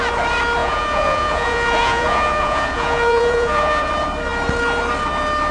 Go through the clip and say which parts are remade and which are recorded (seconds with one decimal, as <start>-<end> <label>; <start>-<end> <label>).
0.0-0.6 recorded; 0.6-3.9 remade; 3.9-5.5 recorded